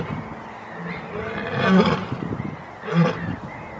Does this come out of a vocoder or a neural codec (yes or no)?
no